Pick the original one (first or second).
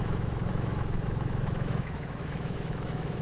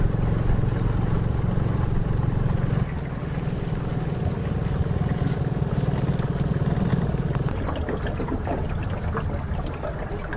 second